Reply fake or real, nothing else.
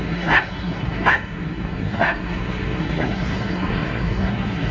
fake